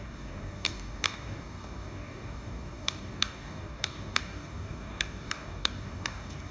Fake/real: fake